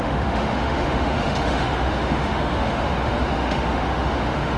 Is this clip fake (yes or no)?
yes